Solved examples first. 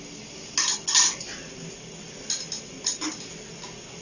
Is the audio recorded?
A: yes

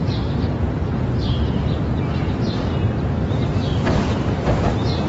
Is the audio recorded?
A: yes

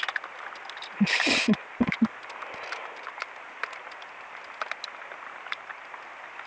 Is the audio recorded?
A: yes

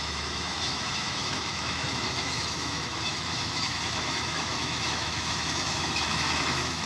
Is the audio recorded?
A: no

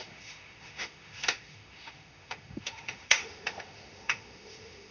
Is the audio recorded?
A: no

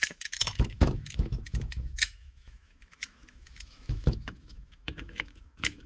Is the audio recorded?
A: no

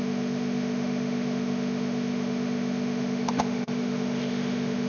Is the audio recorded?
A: no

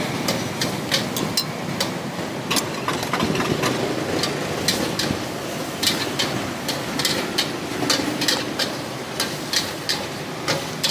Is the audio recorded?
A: yes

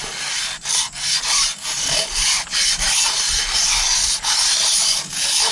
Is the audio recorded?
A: yes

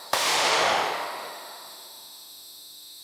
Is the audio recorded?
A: no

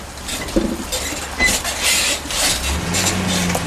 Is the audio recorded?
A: yes